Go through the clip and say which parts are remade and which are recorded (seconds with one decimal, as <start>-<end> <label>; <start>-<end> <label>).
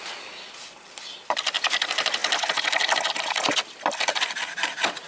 0.0-5.1 recorded